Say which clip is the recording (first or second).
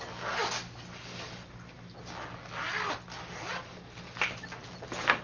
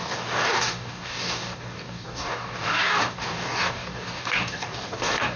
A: first